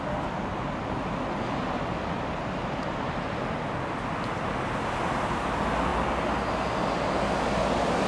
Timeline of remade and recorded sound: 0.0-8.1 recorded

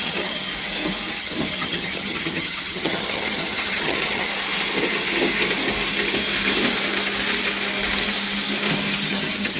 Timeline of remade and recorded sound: 0.0-0.5 remade; 0.5-1.2 recorded; 1.2-4.3 remade; 4.3-9.1 recorded; 9.1-9.6 remade

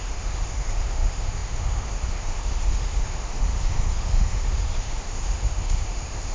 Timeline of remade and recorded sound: 0.0-6.3 remade

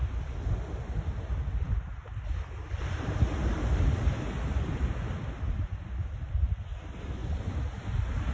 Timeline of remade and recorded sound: 0.0-8.3 recorded

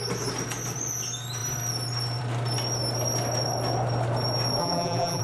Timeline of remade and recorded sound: 0.0-4.6 recorded; 4.6-5.2 remade

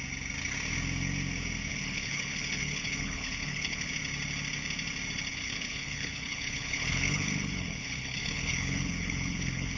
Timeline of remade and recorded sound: 0.0-1.7 recorded; 1.7-3.9 remade; 3.9-5.3 recorded; 5.3-9.8 remade

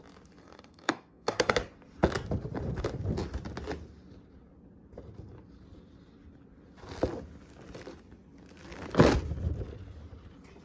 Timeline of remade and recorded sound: 0.0-0.4 recorded; 0.4-1.5 remade; 1.5-10.6 recorded